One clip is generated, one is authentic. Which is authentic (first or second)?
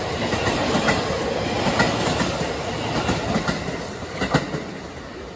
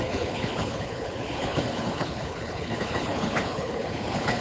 first